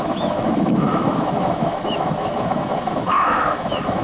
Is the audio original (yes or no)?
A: no